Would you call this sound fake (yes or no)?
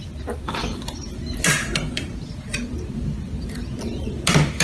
yes